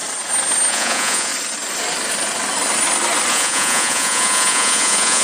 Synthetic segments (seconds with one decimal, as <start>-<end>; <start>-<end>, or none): 0.7-1.3; 3.3-5.2